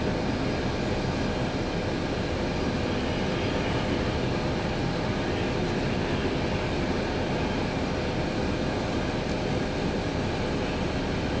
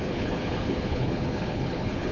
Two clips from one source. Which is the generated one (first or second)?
second